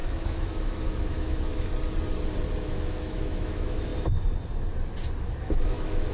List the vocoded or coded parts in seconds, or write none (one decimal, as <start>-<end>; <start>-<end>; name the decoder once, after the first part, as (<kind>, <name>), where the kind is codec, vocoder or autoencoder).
0.0-1.7 (autoencoder, DAC-VAE); 2.6-3.9; 5.2-6.1